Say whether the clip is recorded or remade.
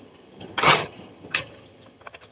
remade